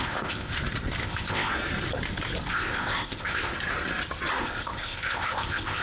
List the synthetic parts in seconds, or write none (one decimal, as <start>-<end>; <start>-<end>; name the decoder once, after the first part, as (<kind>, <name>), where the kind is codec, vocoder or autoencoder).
0.0-0.5 (codec, ZipCodec); 1.0-1.5; 2.5-3.5; 4.4-5.8